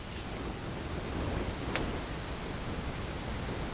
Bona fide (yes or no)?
yes